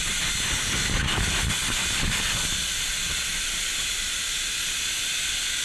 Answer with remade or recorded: recorded